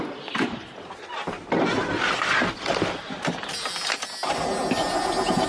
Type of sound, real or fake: real